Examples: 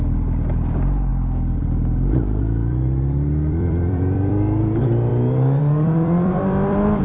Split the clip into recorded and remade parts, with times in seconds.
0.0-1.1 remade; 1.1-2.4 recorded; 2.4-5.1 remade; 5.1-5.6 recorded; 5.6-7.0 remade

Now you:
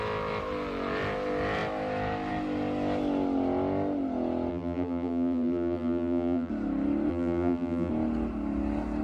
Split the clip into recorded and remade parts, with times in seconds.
0.0-4.5 recorded; 4.5-6.5 remade; 6.5-7.1 recorded; 7.1-7.9 remade; 7.9-9.0 recorded

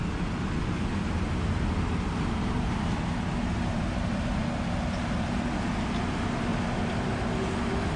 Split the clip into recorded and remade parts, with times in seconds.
0.0-0.9 recorded; 0.9-5.7 remade; 5.7-6.5 recorded; 6.5-7.1 remade; 7.1-8.0 recorded

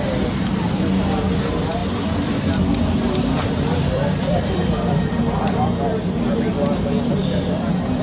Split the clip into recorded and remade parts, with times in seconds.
0.0-1.8 recorded; 1.8-5.2 remade; 5.2-7.2 recorded; 7.2-8.0 remade

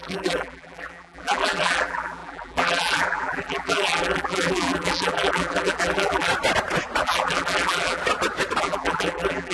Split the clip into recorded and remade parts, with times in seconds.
0.0-6.3 remade; 6.3-7.0 recorded; 7.0-8.0 remade; 8.0-8.6 recorded; 8.6-9.5 remade

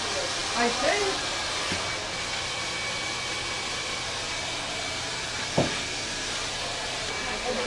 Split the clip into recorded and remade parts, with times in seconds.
0.0-7.7 recorded

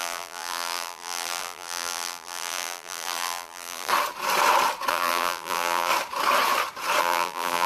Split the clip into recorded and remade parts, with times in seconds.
0.0-3.9 remade; 3.9-4.9 recorded; 4.9-5.9 remade; 5.9-7.0 recorded; 7.0-7.7 remade